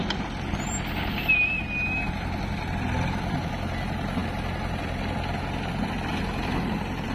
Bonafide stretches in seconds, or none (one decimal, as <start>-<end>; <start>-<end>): 0.0-7.1